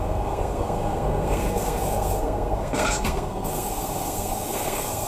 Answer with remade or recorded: remade